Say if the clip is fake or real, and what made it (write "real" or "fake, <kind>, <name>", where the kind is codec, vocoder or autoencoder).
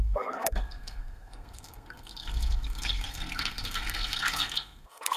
fake, codec, SNAC